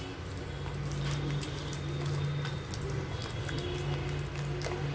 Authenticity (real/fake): real